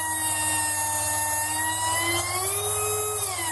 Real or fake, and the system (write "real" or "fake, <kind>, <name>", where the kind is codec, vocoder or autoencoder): real